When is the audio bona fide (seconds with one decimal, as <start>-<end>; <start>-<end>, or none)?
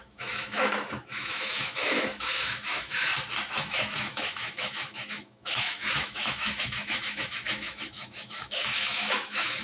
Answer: 3.1-3.6